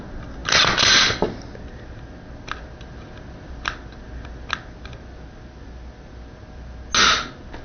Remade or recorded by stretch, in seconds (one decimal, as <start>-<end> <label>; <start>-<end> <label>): 0.0-7.6 recorded